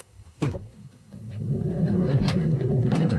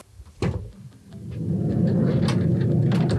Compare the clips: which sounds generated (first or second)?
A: first